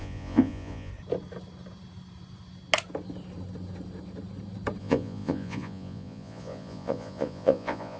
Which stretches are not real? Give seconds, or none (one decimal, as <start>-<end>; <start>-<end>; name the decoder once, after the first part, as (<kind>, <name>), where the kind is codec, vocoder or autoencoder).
0.0-0.9 (vocoder, Vocos); 4.8-8.0